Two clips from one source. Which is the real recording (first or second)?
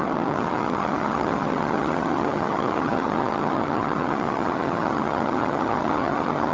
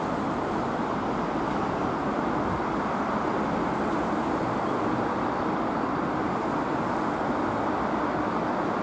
second